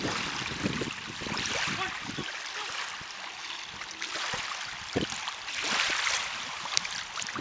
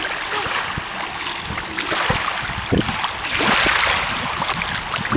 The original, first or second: second